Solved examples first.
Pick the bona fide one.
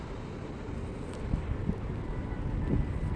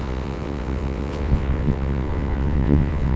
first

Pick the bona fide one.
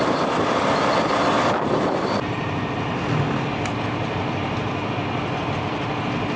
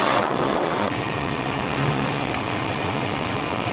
first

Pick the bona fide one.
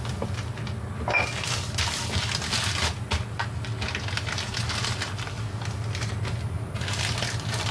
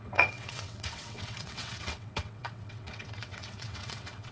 first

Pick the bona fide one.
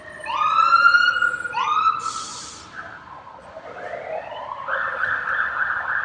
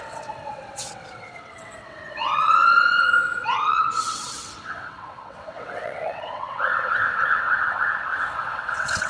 first